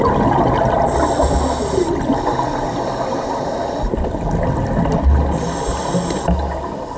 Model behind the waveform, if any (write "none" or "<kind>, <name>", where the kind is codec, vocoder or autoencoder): none